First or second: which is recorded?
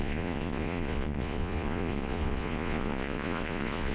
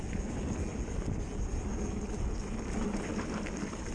second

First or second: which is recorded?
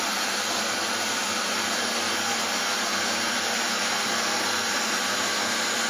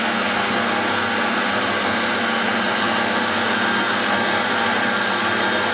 second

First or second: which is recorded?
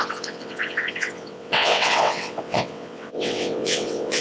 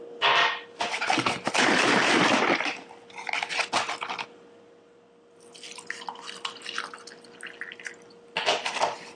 second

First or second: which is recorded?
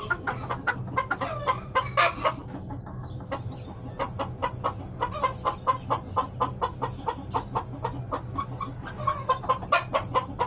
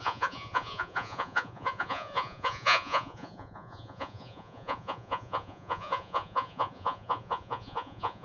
first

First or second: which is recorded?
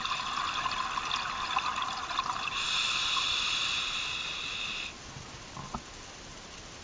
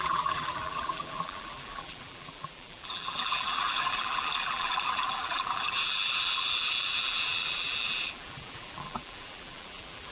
first